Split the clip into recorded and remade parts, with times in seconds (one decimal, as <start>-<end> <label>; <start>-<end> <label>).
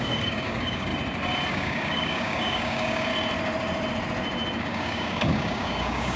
0.0-0.9 remade; 0.9-1.5 recorded; 1.5-3.1 remade; 3.1-4.6 recorded; 4.6-6.2 remade